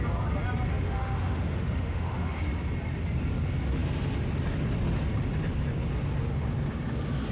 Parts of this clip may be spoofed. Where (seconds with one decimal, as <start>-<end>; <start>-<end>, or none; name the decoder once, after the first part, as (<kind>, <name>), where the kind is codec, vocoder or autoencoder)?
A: 0.7-2.4 (autoencoder, DAC-VAE)